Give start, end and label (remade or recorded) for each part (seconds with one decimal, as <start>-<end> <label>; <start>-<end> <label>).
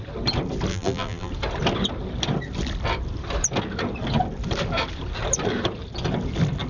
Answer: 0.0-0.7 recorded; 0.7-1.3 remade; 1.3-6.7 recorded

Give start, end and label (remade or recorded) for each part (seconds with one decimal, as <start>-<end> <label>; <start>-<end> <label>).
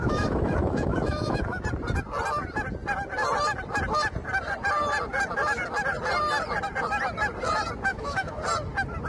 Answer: 0.0-1.6 remade; 1.6-7.9 recorded; 7.9-8.4 remade; 8.4-9.1 recorded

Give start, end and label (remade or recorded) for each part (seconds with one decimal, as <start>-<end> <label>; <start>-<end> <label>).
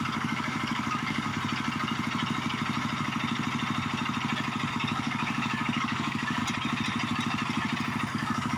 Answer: 0.0-1.3 remade; 1.3-4.7 recorded; 4.7-6.4 remade; 6.4-8.1 recorded; 8.1-8.6 remade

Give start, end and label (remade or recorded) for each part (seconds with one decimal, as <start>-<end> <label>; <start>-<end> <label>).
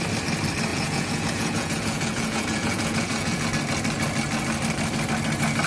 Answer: 0.0-0.7 recorded; 0.7-3.5 remade; 3.5-5.7 recorded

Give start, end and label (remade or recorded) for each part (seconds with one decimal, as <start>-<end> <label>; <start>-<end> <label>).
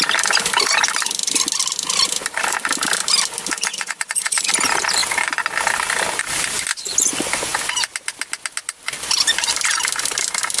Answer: 0.0-3.7 recorded; 3.7-4.5 remade; 4.5-10.6 recorded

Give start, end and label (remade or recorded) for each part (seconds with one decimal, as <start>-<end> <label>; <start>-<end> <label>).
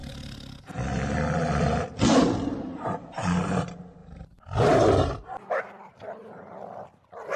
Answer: 0.0-4.0 recorded; 4.0-5.6 remade; 5.6-7.4 recorded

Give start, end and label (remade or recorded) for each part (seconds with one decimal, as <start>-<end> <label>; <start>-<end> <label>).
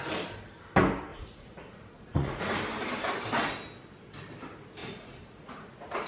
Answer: 0.0-1.1 recorded; 1.1-2.6 remade; 2.6-4.8 recorded; 4.8-6.1 remade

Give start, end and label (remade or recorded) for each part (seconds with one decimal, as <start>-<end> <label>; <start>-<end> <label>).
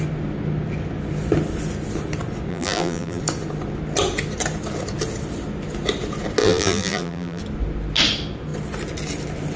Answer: 0.0-2.5 recorded; 2.5-3.2 remade; 3.2-6.4 recorded; 6.4-7.4 remade; 7.4-9.6 recorded